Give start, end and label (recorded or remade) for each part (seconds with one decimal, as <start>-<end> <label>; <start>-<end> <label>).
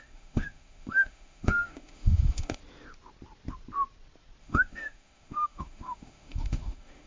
0.0-2.6 remade; 2.6-4.4 recorded; 4.4-7.1 remade